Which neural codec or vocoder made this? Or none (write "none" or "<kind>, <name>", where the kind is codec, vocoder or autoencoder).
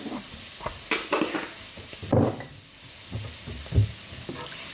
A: none